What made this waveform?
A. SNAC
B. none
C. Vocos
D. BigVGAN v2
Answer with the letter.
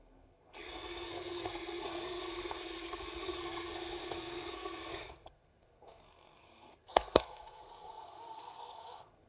A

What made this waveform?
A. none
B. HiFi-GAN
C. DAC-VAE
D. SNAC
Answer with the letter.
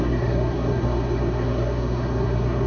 D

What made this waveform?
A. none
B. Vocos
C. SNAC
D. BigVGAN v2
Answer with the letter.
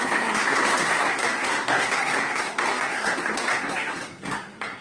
C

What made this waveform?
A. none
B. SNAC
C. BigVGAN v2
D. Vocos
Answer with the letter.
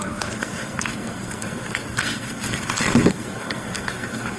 B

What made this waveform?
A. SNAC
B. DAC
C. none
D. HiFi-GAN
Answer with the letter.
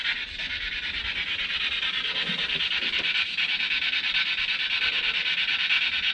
C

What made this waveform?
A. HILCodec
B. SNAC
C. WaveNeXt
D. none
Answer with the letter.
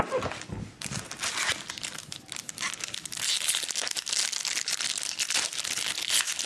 D